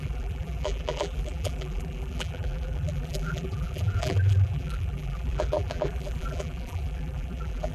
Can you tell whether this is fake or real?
fake